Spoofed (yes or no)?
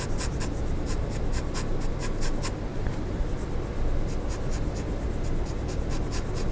no